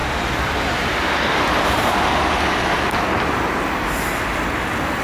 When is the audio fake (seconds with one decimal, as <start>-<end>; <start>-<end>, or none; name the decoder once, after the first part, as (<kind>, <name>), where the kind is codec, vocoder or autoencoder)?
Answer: none